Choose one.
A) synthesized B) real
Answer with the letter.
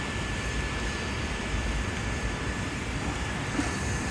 A